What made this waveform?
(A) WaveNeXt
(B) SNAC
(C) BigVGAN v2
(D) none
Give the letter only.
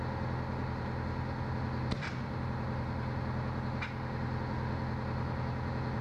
D